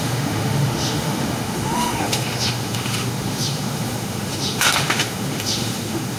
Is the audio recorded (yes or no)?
no